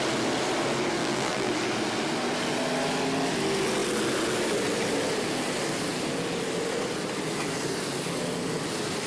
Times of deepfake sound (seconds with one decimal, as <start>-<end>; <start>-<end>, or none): 1.0-1.5